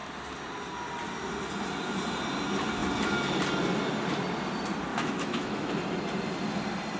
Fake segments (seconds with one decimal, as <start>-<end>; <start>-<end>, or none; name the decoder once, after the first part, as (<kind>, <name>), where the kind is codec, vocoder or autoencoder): 4.9-5.7 (autoencoder, DAC-VAE)